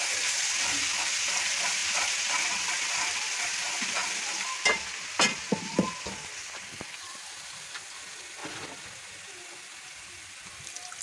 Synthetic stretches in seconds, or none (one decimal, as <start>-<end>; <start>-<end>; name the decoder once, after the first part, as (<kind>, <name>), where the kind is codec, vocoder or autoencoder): none